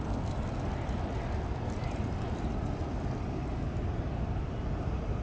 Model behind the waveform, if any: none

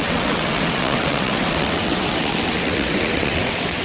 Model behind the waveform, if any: vocoder, WaveNeXt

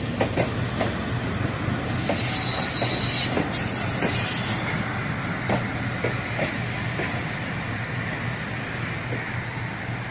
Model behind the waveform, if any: none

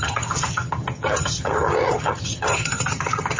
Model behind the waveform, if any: vocoder, HiFi-GAN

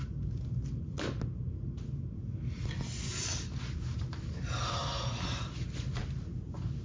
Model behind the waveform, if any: none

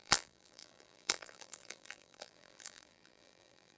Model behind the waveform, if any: vocoder, BigVGAN v2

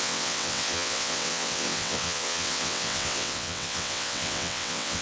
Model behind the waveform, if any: vocoder, WaveNeXt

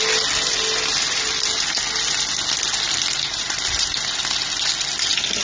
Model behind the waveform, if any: none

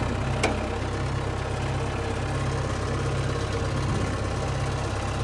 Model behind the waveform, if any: none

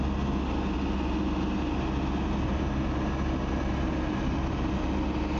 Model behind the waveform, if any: none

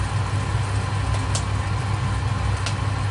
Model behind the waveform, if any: none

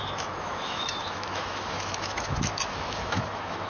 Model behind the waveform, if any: autoencoder, DAC-VAE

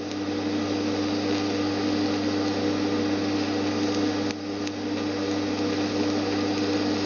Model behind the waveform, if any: none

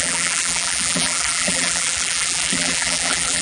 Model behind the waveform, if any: vocoder, BigVGAN v2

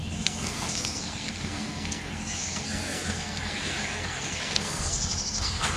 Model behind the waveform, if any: codec, SNAC